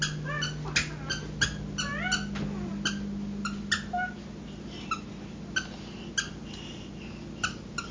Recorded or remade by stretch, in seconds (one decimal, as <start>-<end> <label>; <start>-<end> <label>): 0.0-7.9 recorded